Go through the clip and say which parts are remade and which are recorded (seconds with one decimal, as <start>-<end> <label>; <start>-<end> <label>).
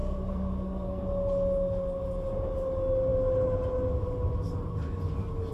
0.0-1.0 remade; 1.0-5.5 recorded